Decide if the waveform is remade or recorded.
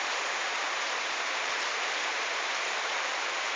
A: remade